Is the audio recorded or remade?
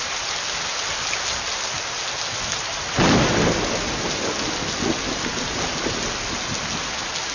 recorded